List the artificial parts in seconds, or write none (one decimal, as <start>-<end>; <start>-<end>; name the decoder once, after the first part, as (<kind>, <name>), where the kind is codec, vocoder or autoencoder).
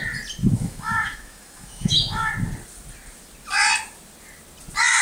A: 0.4-2.3 (autoencoder, DAC-VAE)